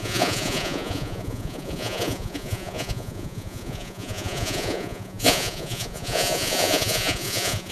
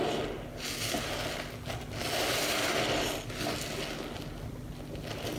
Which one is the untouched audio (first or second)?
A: second